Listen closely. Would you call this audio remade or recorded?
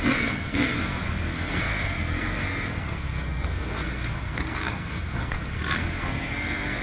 remade